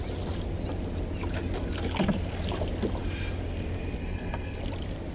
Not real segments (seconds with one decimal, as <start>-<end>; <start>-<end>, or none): 4.0-4.6